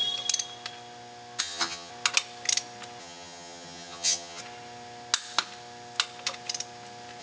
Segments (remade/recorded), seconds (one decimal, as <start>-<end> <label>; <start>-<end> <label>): 0.0-1.4 recorded; 1.4-1.9 remade; 1.9-3.0 recorded; 3.0-4.4 remade; 4.4-7.2 recorded